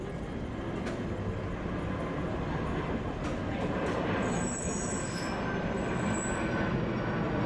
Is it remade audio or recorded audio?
recorded